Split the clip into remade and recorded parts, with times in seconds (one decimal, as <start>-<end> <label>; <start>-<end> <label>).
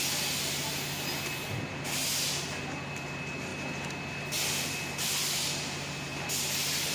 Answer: 0.0-6.9 recorded